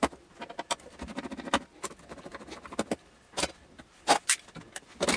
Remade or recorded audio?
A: recorded